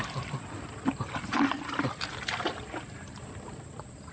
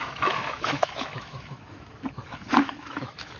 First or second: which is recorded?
first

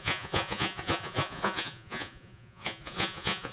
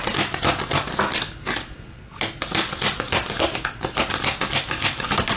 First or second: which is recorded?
second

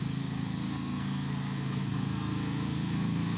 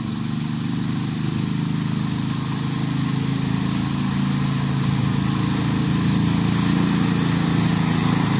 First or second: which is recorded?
second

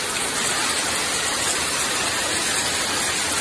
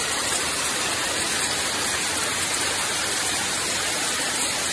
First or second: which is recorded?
first